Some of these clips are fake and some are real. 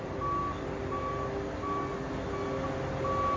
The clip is real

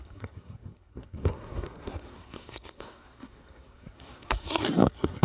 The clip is fake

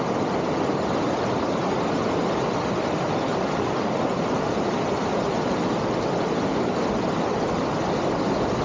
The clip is real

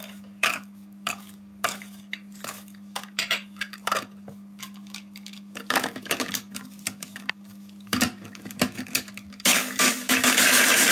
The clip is fake